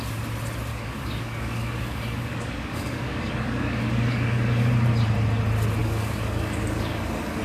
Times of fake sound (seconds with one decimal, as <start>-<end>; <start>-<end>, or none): 0.7-4.7; 5.8-7.4